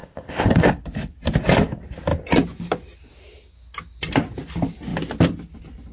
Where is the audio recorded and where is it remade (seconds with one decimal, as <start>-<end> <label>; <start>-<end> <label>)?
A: 0.0-0.7 remade; 0.7-5.9 recorded